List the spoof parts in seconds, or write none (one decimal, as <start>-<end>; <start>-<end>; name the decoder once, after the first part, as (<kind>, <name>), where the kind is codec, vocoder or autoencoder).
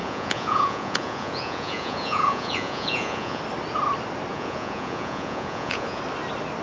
0.0-3.4 (vocoder, Vocos); 4.3-6.0